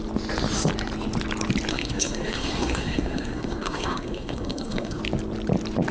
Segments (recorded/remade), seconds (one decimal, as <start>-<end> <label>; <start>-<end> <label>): 0.0-1.7 recorded; 1.7-5.0 remade; 5.0-5.9 recorded